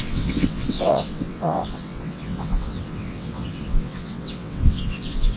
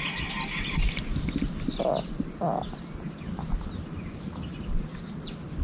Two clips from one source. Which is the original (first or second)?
second